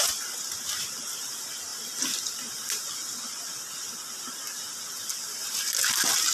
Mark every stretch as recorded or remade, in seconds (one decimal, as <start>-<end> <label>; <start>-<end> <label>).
0.0-6.3 recorded